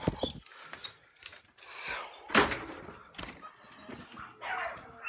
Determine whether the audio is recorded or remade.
recorded